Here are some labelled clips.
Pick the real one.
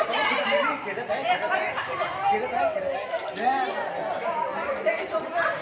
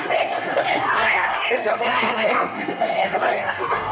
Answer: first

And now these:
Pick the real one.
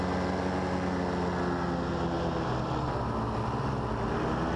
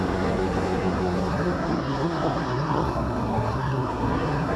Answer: first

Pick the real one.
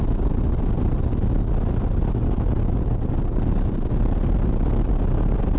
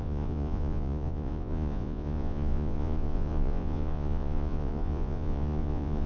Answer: first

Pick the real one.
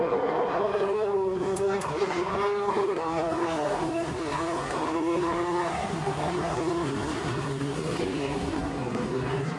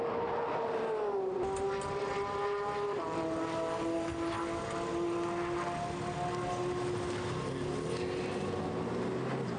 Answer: second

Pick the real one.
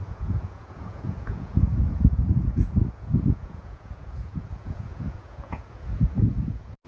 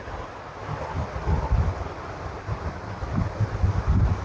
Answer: second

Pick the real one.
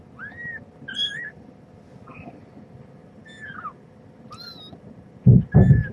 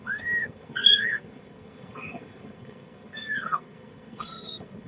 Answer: first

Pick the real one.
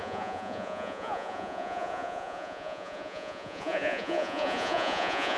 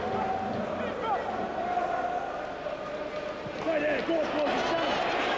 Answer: second